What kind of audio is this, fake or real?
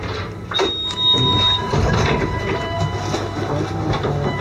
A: real